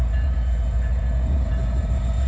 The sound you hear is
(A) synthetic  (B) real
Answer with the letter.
A